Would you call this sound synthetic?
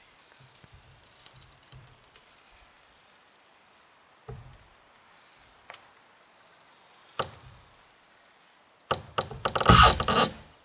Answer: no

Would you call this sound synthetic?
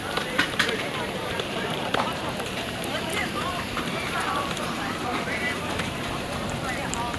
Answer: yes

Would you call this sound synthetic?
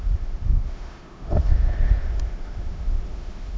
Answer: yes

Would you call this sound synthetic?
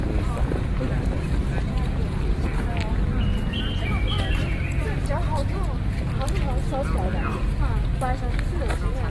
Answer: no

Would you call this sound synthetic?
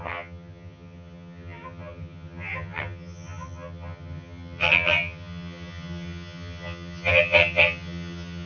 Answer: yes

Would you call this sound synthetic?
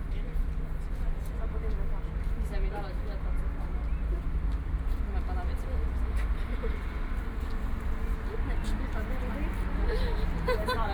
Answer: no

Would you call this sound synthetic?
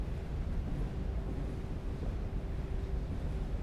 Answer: no